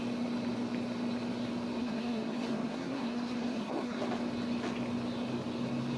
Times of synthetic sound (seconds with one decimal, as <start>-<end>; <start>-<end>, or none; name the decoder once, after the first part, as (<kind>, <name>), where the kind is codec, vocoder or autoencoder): 1.8-4.0 (codec, SNAC)